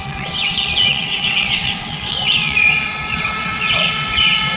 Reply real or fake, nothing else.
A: fake